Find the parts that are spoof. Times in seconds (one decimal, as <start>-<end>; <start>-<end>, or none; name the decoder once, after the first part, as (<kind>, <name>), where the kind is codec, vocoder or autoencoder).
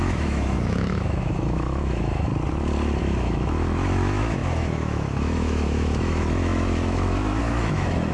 0.0-2.3 (autoencoder, DAC-VAE); 3.0-8.1